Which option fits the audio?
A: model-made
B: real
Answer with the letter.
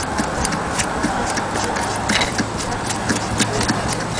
B